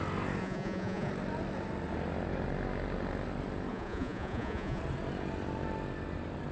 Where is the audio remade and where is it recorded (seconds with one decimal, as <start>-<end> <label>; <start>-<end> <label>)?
0.0-0.4 recorded; 0.4-1.1 remade; 1.1-3.7 recorded; 3.7-4.8 remade; 4.8-6.5 recorded